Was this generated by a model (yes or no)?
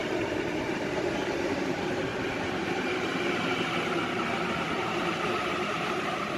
yes